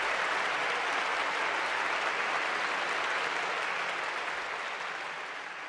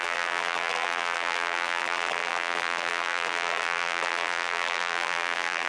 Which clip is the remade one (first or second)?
second